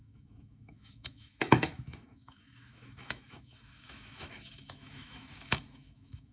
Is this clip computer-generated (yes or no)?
yes